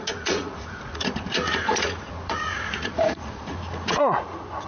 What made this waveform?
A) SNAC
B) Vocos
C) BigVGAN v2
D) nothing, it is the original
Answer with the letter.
B